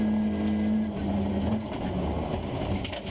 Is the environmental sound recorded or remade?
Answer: recorded